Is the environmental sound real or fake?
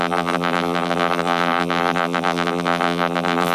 fake